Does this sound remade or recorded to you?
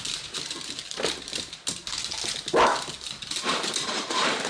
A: recorded